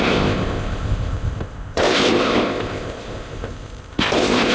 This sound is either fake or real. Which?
fake